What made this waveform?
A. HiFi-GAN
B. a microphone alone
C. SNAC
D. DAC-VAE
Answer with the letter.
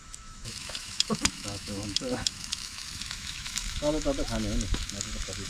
D